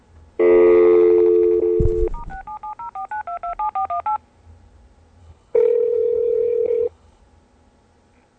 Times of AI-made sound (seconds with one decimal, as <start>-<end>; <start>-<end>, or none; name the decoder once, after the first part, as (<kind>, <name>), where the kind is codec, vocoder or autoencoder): 5.2-7.2 (codec, HILCodec)